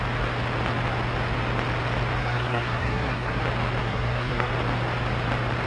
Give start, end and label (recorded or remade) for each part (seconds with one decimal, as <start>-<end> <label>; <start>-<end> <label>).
0.0-2.2 recorded; 2.2-3.4 remade; 3.4-3.8 recorded; 3.8-4.5 remade; 4.5-5.7 recorded